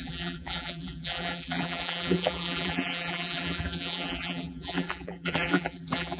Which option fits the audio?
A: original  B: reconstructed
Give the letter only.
B